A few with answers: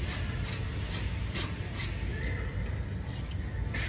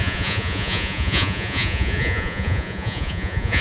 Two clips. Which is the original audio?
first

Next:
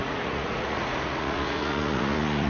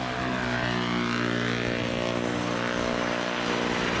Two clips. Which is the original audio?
second